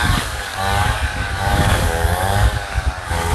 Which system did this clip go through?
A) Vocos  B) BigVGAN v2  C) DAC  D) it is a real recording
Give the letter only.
C